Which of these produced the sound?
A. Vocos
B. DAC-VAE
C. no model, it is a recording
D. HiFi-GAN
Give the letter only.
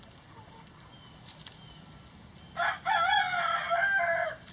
C